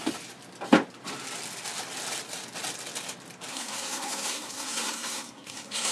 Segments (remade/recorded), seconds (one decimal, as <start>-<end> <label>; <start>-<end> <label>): 0.0-3.5 recorded; 3.5-5.9 remade